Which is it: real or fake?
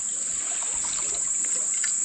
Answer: real